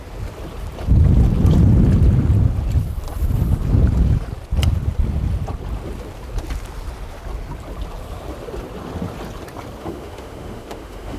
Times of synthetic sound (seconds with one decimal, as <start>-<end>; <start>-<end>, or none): 9.8-11.2

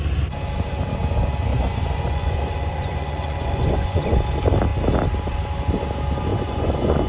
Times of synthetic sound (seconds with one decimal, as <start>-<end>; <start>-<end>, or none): 1.5-4.2; 6.3-7.1

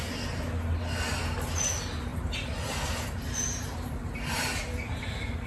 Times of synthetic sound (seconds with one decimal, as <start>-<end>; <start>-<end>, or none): 2.1-5.5